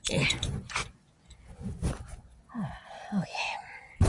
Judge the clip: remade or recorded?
remade